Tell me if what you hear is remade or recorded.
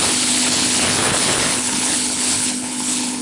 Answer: remade